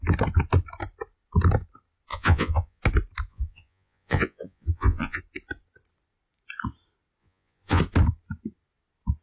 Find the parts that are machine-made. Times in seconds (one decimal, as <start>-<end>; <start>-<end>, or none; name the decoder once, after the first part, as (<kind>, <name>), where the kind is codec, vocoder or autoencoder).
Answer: 2.1-2.8 (vocoder, Vocos); 3.3-5.2; 7.2-7.8